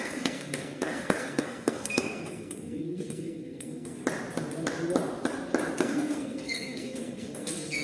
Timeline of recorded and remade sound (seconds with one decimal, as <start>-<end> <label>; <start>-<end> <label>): 0.0-4.0 remade; 4.0-5.8 recorded; 5.8-7.8 remade